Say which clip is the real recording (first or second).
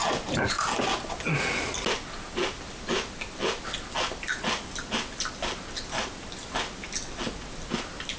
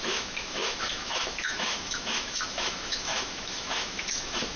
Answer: first